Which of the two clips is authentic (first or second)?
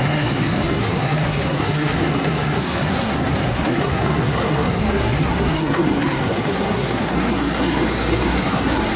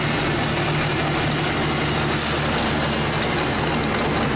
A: second